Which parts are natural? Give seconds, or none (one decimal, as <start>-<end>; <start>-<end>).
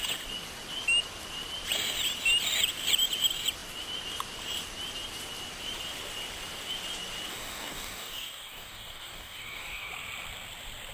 0.0-7.3; 9.9-10.9